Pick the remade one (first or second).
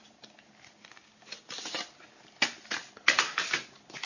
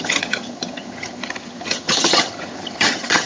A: second